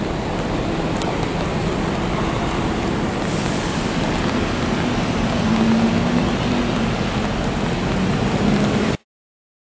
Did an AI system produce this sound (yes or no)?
no